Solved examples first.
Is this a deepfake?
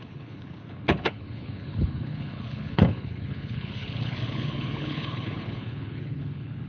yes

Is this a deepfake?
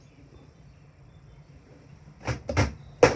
no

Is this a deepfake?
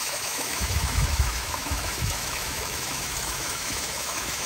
yes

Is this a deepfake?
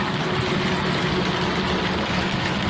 no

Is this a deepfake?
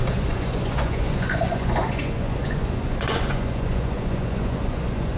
yes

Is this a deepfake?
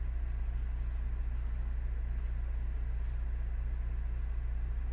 no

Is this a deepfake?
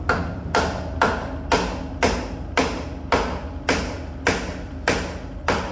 no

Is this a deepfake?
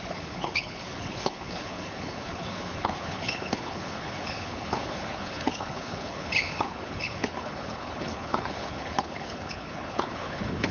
yes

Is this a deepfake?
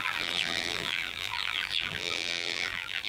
yes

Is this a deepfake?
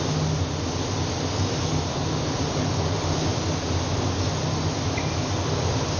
no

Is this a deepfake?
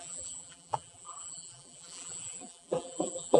yes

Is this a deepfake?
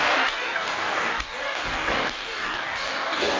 yes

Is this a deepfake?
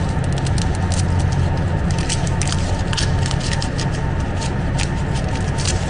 no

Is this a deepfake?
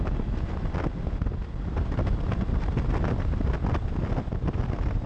no